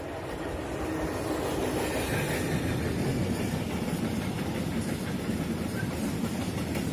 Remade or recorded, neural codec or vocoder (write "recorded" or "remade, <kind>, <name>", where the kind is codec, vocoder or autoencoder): recorded